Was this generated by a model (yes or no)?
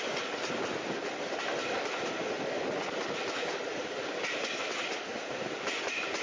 no